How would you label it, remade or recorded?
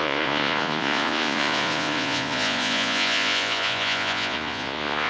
remade